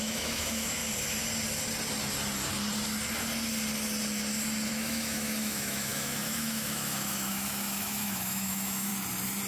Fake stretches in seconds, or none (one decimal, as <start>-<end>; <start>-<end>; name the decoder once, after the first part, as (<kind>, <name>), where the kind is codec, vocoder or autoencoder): 0.0-0.8 (autoencoder, DAC-VAE); 4.7-8.9